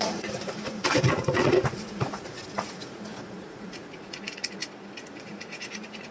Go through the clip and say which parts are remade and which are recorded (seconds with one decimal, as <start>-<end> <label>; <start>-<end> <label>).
0.0-4.6 remade; 4.6-5.2 recorded; 5.2-6.1 remade